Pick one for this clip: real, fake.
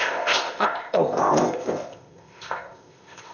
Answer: fake